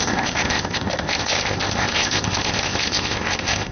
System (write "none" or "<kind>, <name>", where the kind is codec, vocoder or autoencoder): codec, ZipCodec